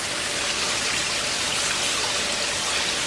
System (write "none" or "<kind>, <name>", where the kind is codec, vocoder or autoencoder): none